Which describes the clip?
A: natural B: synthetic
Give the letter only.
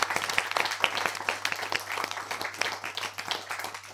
A